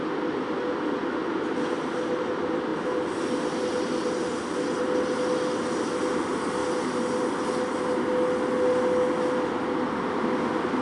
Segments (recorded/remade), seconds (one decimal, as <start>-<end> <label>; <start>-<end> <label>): 0.0-10.8 recorded

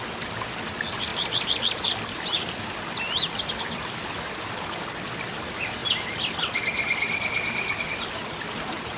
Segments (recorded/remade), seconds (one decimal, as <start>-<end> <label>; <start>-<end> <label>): 0.0-1.1 recorded; 1.1-4.3 remade; 4.3-5.8 recorded; 5.8-7.8 remade; 7.8-9.0 recorded